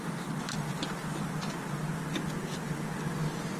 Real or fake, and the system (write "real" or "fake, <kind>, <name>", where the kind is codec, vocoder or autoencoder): real